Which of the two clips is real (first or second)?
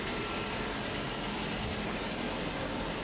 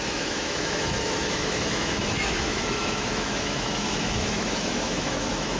first